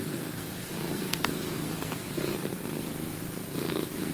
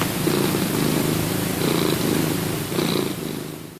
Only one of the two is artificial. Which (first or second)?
first